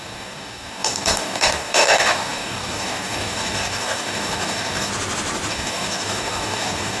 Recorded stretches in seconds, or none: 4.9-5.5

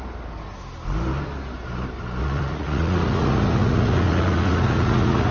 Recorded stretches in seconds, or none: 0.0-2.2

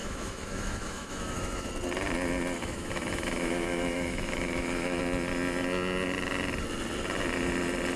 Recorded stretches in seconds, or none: 1.7-2.6; 5.0-8.0